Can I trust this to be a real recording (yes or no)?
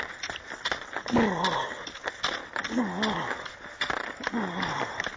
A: yes